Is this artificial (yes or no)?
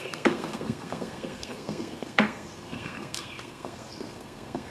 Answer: yes